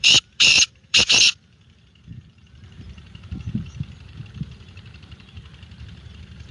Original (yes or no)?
no